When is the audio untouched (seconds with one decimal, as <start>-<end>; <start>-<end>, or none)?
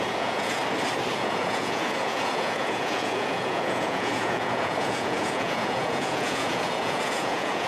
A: 0.6-1.1